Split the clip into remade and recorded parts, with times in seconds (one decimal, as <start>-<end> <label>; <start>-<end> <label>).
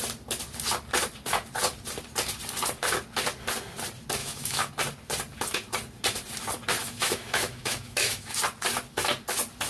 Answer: 0.0-4.2 recorded; 4.2-4.7 remade; 4.7-6.8 recorded; 6.8-8.4 remade; 8.4-9.7 recorded